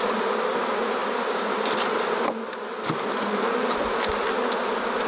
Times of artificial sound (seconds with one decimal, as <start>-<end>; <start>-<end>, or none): none